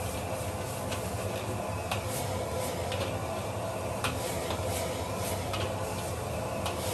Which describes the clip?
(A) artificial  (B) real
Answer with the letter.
B